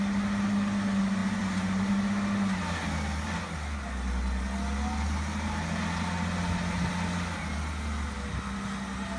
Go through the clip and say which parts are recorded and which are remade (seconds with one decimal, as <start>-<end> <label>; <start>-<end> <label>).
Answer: 0.0-9.2 recorded